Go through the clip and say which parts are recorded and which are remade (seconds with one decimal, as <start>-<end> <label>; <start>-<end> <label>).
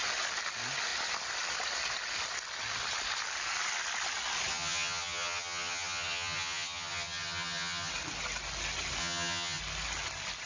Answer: 0.0-4.5 recorded; 4.5-7.9 remade; 7.9-9.0 recorded; 9.0-9.6 remade; 9.6-10.5 recorded